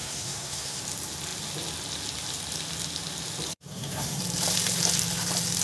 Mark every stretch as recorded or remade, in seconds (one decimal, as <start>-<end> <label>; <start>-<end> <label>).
0.0-0.8 remade; 0.8-3.5 recorded; 3.5-4.2 remade; 4.2-5.6 recorded